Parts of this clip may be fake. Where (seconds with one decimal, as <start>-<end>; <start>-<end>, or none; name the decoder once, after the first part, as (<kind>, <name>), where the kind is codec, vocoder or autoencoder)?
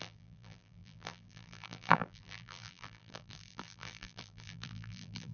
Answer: 0.0-5.3 (vocoder, BigVGAN v2)